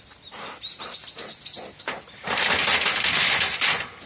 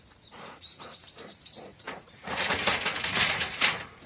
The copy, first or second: second